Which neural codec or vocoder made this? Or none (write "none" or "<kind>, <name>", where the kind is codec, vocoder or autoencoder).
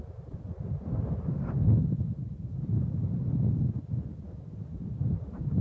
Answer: none